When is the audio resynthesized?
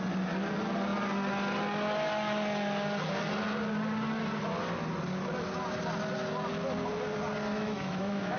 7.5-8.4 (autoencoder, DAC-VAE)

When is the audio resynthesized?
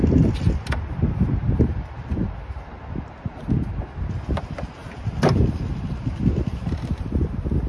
none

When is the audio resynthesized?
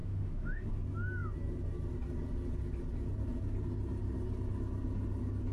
0.0-0.7 (autoencoder, DAC-VAE)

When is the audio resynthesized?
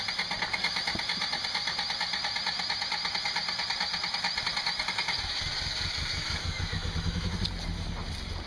6.2-7.3 (autoencoder, DAC-VAE)